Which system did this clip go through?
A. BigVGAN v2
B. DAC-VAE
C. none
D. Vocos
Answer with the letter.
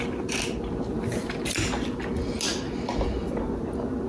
C